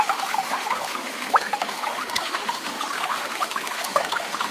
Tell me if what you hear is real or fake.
fake